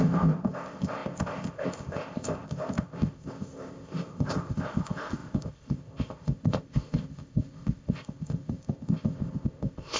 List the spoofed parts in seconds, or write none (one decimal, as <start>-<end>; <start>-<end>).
0.0-10.0

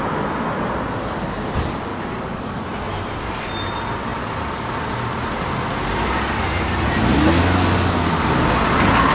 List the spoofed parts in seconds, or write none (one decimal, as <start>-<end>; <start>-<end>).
1.9-2.6